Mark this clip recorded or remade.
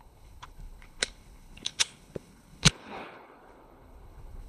remade